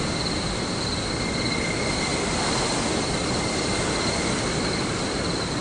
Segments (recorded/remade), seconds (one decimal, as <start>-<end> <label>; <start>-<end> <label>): 0.0-5.6 recorded